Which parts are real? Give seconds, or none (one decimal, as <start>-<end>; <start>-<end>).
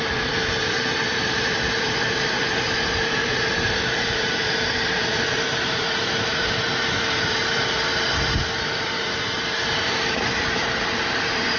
7.9-8.8